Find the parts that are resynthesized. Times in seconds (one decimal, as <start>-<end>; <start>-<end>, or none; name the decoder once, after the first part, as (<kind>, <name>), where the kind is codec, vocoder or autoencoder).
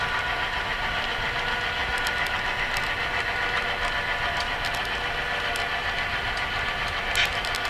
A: none